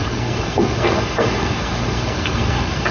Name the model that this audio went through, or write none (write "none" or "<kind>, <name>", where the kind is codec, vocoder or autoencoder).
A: codec, SNAC